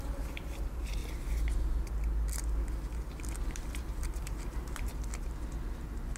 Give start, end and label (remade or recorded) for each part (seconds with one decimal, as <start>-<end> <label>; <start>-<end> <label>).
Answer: 0.0-1.0 remade; 1.0-3.5 recorded; 3.5-4.9 remade; 4.9-6.2 recorded